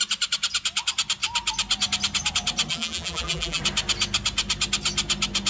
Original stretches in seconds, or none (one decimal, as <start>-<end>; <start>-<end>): 0.0-2.7; 3.6-5.5